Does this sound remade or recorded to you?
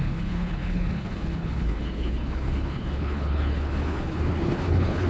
remade